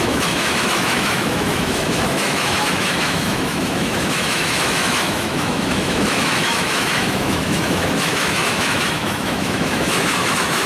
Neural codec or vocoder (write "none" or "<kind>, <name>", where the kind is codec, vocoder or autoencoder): autoencoder, DAC-VAE